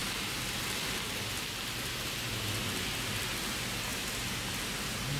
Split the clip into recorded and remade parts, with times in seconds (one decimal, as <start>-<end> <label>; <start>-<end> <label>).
0.0-5.2 recorded